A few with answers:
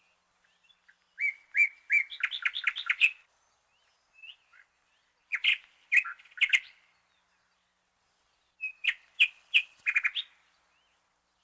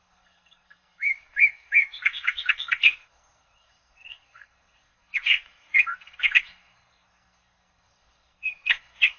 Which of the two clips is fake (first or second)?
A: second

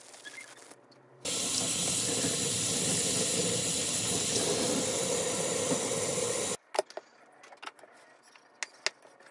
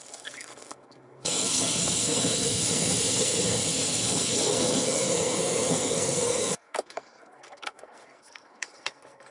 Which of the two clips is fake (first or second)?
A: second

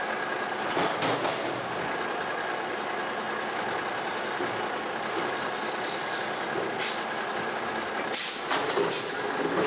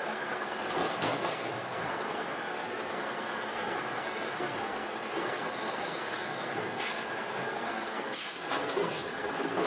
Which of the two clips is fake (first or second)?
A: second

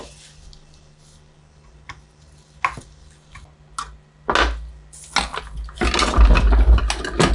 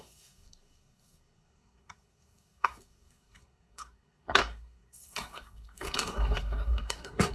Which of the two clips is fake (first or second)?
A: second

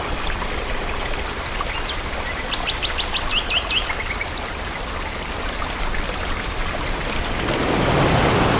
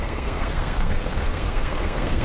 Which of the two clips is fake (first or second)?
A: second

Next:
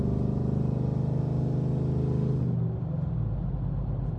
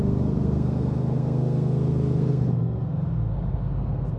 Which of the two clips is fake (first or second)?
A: second